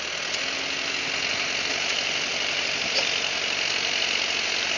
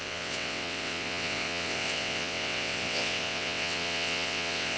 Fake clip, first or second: second